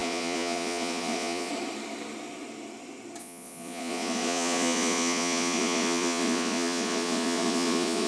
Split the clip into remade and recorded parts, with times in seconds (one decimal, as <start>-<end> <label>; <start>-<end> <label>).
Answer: 0.0-1.5 remade; 1.5-3.2 recorded; 3.2-8.1 remade